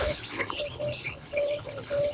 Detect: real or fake fake